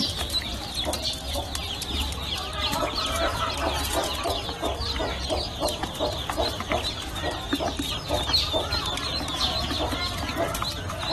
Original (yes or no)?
yes